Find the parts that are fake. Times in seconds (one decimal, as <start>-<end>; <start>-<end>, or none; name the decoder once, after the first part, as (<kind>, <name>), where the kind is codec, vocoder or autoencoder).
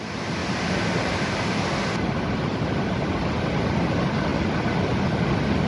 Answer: 0.4-1.7 (vocoder, BigVGAN v2)